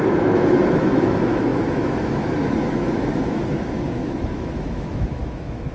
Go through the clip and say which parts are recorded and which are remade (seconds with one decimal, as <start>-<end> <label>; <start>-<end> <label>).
0.0-5.7 remade